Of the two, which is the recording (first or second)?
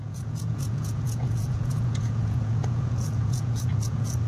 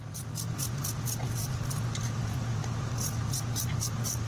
second